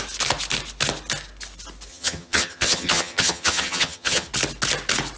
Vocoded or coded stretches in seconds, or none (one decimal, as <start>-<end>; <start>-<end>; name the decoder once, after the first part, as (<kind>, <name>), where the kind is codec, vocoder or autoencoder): 1.9-4.3 (vocoder, HiFi-GAN)